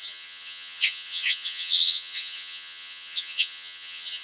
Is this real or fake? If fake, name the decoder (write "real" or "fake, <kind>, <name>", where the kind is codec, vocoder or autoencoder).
fake, vocoder, HiFi-GAN